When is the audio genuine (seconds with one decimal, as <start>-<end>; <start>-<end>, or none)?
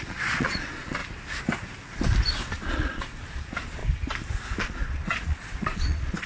1.0-2.5; 3.8-4.6